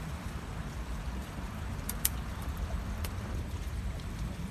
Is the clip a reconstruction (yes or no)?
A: yes